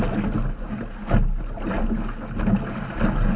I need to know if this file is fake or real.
real